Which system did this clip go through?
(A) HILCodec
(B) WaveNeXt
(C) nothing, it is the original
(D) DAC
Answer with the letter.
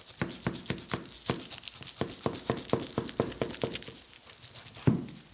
C